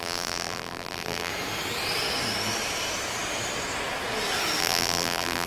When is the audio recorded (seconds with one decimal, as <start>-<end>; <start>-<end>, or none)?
1.3-4.6